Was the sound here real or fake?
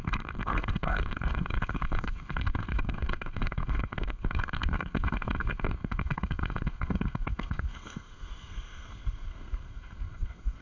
fake